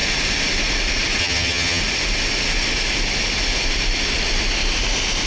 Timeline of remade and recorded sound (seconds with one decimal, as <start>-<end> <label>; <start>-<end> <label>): 0.0-1.2 recorded; 1.2-1.8 remade; 1.8-5.3 recorded